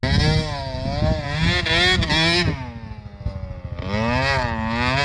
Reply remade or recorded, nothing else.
recorded